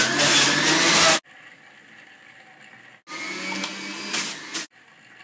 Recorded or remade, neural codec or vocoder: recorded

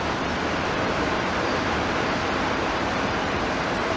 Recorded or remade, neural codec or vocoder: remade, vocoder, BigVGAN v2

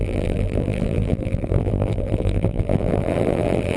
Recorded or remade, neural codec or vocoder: remade, vocoder, BigVGAN v2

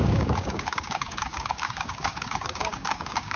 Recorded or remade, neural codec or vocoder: remade, codec, DAC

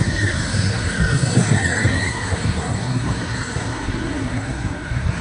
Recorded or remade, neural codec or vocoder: remade, codec, SNAC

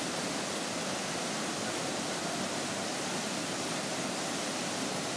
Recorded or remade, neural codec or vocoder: recorded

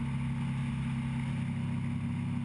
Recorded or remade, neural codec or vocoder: recorded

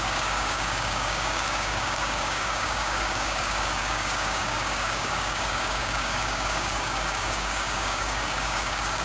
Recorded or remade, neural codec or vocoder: remade, codec, DAC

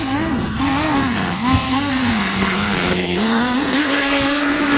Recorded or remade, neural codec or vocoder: remade, codec, SNAC